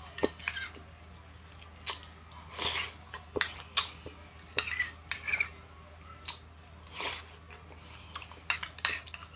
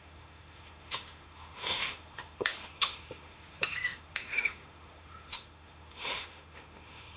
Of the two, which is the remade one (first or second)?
second